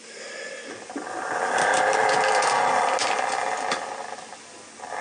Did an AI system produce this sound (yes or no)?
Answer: no